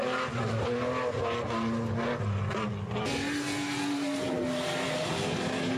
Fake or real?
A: real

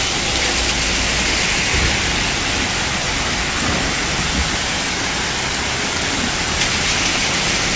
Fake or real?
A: real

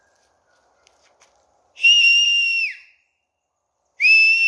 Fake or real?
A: real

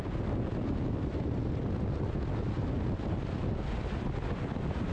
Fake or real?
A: real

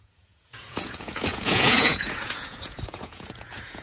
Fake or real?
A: fake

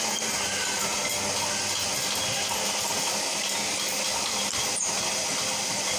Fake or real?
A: real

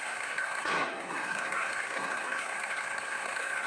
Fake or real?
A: fake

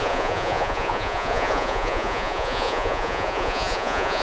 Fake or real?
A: fake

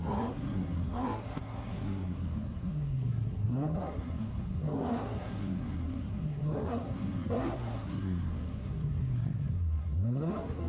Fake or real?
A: fake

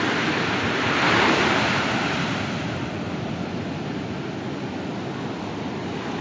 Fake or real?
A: real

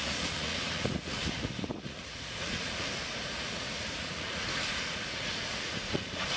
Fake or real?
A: fake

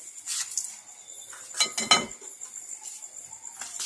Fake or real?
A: real